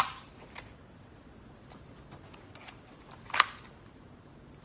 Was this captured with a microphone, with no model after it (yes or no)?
yes